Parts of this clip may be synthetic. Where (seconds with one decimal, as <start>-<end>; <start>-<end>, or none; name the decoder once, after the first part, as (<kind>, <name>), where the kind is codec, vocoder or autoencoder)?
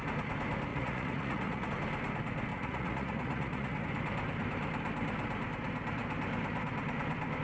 0.7-1.7 (vocoder, Vocos); 2.5-3.8